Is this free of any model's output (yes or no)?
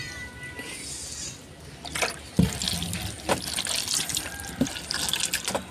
yes